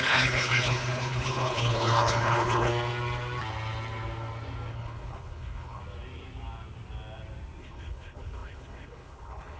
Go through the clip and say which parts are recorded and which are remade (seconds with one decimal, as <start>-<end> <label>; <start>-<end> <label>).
0.0-2.7 remade; 2.7-4.7 recorded; 4.7-5.8 remade; 5.8-7.6 recorded; 7.6-9.6 remade